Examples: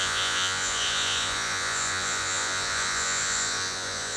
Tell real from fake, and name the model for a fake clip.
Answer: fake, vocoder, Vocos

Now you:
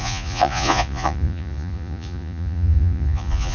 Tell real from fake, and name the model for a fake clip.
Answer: fake, vocoder, Vocos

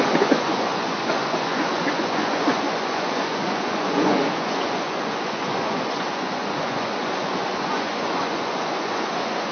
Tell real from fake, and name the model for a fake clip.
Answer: fake, vocoder, Vocos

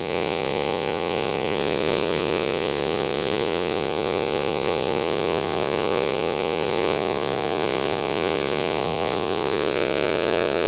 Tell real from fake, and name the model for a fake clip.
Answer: fake, vocoder, Vocos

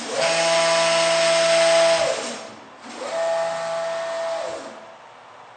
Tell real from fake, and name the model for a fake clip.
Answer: real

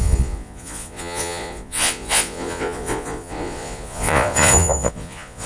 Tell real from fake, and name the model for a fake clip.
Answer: fake, vocoder, Vocos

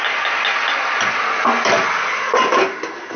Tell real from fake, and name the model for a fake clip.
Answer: real